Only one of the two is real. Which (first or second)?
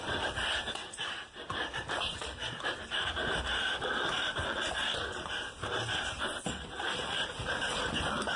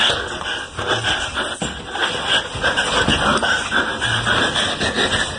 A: second